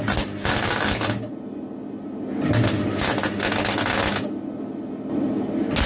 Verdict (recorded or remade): recorded